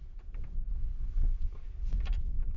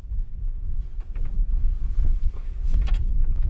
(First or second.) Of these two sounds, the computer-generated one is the second